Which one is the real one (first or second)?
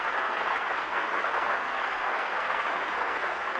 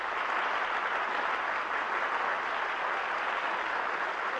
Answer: second